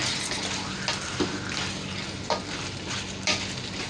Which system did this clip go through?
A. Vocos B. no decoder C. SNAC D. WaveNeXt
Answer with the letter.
B